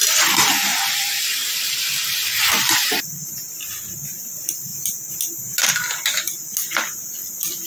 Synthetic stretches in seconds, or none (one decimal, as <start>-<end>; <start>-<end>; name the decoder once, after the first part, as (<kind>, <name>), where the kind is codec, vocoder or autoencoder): 0.7-3.3 (vocoder, BigVGAN v2); 4.7-5.7